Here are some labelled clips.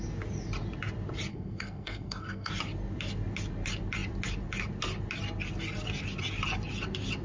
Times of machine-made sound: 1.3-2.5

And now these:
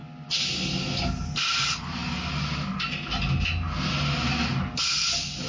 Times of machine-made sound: none

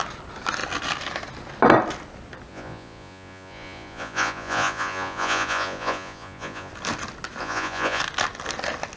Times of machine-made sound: 2.5-6.7; 7.4-8.0

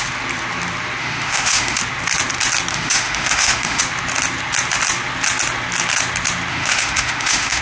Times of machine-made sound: 1.0-1.8; 2.7-3.8; 6.5-7.6

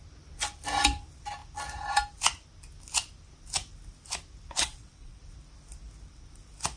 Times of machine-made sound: 4.6-5.2

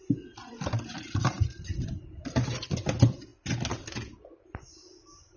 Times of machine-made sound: 0.5-2.6

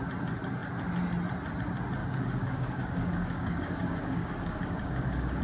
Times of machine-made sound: 2.0-5.4